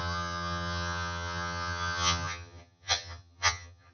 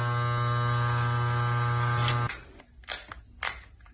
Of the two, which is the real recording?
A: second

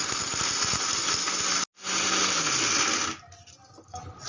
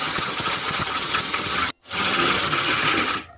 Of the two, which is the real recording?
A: first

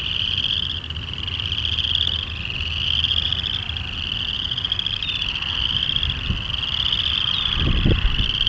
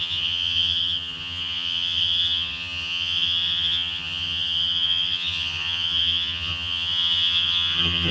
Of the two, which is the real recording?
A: first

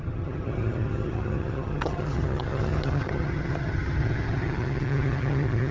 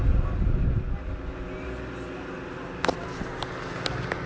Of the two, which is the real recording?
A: second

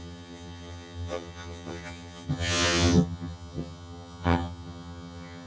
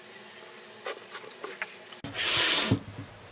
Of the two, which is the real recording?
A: second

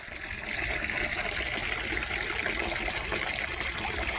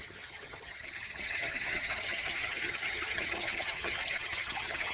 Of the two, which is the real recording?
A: first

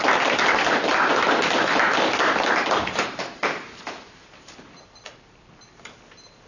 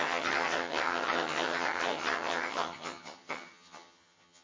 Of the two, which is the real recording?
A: first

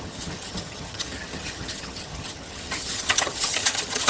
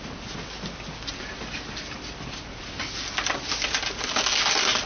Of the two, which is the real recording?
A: second